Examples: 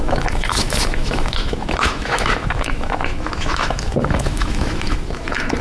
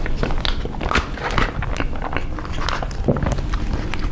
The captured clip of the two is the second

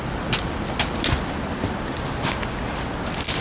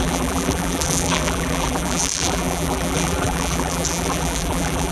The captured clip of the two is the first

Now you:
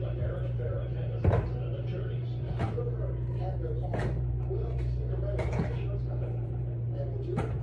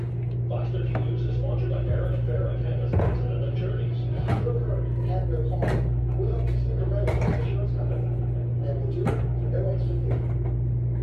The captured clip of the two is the second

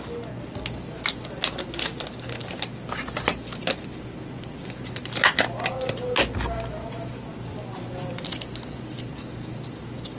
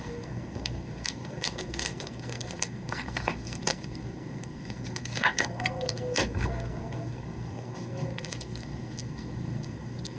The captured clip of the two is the first